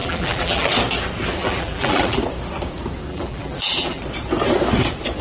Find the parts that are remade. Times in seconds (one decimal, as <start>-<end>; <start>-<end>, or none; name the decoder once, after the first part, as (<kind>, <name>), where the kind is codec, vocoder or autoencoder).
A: 0.0-0.7 (vocoder, BigVGAN v2); 1.4-2.2; 3.1-4.0